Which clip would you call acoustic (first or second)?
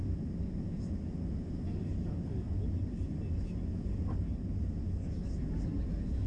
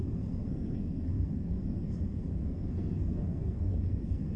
first